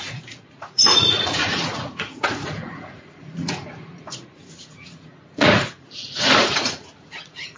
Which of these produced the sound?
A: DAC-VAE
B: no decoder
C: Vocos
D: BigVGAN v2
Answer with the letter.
C